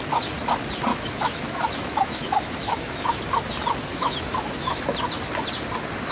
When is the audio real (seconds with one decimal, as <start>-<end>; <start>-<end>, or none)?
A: 0.0-0.9; 3.2-3.9; 4.8-6.1